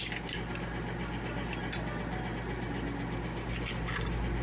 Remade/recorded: recorded